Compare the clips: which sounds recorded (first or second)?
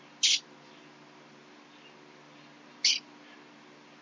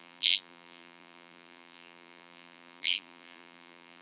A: first